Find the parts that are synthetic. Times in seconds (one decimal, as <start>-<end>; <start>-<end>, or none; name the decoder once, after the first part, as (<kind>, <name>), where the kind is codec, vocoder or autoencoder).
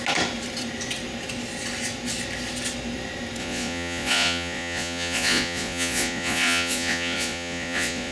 3.4-8.1 (vocoder, Vocos)